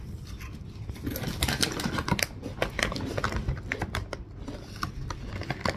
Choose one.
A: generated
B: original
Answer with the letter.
B